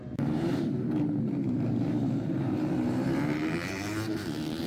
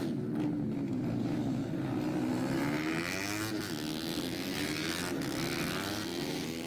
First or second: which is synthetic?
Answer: first